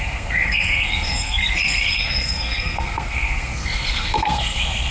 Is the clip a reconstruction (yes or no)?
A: yes